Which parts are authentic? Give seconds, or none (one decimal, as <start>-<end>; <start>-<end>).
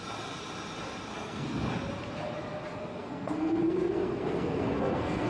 0.0-1.1; 1.6-2.7